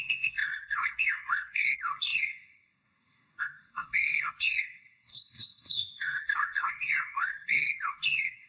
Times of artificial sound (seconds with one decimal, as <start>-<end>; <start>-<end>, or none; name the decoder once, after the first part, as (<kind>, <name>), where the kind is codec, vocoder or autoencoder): 0.0-8.5 (codec, SNAC)